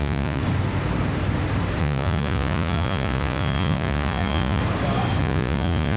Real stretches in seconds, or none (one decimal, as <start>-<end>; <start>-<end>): 0.4-1.8; 4.6-5.2